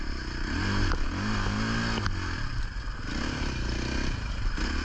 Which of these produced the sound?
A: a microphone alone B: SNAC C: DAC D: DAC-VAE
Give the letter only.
A